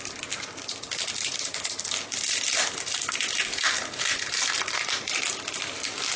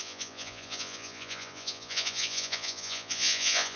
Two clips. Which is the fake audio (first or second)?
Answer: second